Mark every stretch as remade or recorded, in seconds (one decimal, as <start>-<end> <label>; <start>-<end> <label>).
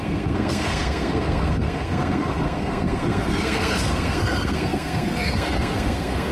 0.0-6.3 remade